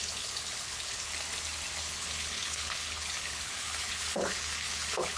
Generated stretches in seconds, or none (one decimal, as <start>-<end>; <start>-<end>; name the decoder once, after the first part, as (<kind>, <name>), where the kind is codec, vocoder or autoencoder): 0.0-1.1 (codec, HILCodec); 1.8-5.2